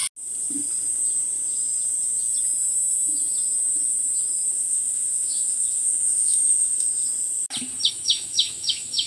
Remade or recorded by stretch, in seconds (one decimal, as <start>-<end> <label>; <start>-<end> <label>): 0.0-4.5 recorded; 4.5-7.0 remade; 7.0-7.9 recorded; 7.9-9.1 remade